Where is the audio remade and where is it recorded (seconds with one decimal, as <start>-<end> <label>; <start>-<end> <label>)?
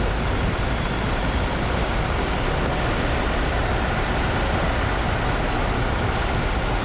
0.0-6.8 recorded